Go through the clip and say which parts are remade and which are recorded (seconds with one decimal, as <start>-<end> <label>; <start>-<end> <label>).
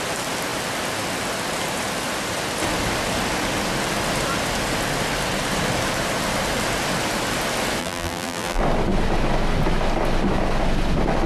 0.0-7.8 recorded; 7.8-8.6 remade; 8.6-11.3 recorded